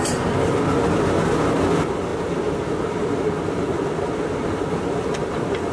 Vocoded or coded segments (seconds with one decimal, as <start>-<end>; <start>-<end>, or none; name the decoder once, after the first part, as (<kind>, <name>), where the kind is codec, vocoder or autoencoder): none

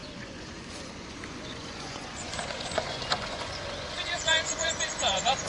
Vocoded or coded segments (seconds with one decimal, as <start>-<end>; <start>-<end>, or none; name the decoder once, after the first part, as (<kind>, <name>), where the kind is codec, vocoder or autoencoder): 0.0-5.5 (vocoder, Vocos)

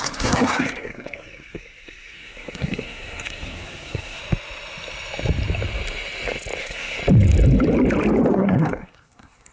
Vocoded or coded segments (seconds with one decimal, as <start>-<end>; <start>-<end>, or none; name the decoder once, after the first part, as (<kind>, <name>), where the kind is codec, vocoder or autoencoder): 0.0-4.2 (codec, SNAC); 6.6-7.0; 8.3-9.5

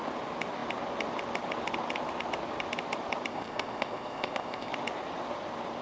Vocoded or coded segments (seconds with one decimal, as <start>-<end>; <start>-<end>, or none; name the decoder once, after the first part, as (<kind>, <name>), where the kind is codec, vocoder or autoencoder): 3.3-4.7 (codec, ZipCodec)

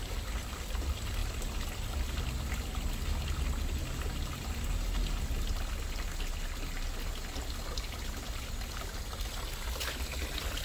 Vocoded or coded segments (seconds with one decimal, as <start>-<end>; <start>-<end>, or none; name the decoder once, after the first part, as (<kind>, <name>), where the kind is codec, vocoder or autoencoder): none

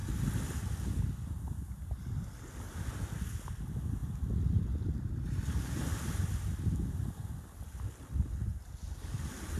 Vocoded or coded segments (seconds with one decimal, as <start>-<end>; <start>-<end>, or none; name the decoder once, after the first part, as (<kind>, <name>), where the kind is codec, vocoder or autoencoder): none

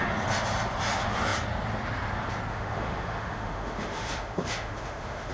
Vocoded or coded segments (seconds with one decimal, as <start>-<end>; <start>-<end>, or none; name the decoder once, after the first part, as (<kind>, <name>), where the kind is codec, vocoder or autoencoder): 2.5-5.3 (autoencoder, DAC-VAE)